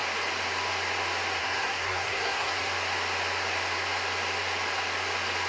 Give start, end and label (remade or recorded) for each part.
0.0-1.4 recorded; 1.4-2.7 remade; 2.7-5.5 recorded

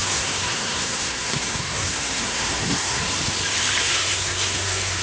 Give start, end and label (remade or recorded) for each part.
0.0-3.0 remade; 3.0-3.8 recorded; 3.8-5.0 remade

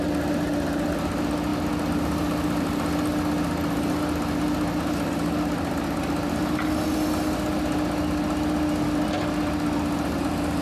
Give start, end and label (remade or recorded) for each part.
0.0-10.6 recorded